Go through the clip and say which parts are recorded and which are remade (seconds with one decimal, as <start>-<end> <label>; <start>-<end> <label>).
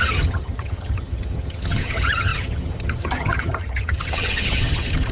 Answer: 0.0-5.1 remade